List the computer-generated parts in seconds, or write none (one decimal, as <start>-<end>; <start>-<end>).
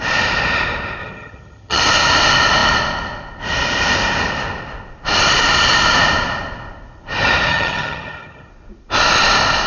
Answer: 1.0-1.8; 7.5-8.5